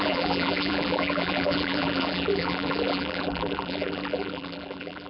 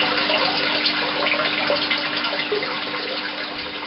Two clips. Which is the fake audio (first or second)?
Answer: first